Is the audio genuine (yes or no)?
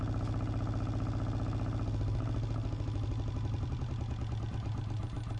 yes